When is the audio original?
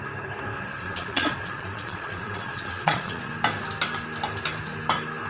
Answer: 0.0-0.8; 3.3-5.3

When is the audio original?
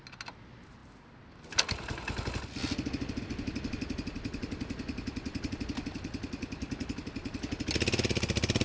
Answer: 0.0-8.6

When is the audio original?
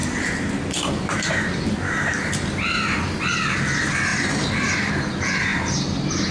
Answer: 0.5-4.1; 4.9-6.3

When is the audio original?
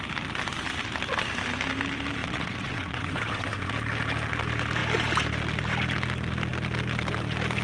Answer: 0.0-2.2; 3.7-7.6